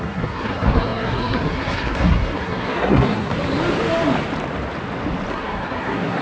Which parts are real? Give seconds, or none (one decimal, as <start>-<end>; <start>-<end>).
3.3-5.3